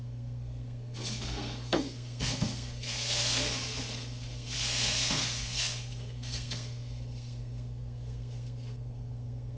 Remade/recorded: remade